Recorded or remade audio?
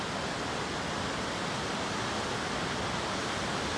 recorded